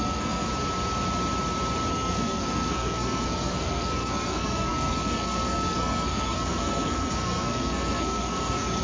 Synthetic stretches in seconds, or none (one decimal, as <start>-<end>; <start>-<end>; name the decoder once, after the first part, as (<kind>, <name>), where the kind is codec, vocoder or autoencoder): 0.0-0.5 (codec, SNAC); 1.9-8.8

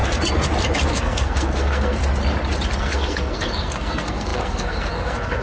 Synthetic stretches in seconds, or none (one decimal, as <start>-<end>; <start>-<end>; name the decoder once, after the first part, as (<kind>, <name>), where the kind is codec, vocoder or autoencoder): 0.9-2.0 (codec, SNAC); 2.8-5.4

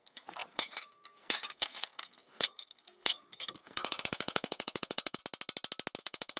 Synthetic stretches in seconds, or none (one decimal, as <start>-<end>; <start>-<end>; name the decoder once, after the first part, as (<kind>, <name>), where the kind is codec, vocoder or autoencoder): 0.0-5.2 (codec, SNAC); 6.0-6.4

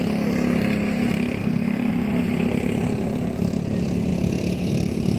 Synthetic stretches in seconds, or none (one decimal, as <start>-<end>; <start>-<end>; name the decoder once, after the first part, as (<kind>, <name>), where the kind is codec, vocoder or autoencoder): 1.4-1.9 (codec, SNAC)

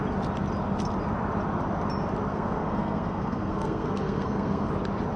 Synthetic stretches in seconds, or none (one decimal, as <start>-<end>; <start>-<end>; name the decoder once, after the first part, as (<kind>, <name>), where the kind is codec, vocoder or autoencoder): 2.3-4.7 (codec, SNAC)

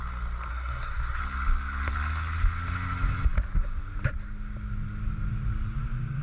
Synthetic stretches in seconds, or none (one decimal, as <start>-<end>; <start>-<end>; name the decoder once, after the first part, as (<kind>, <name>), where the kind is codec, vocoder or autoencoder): 0.5-1.2 (codec, SNAC)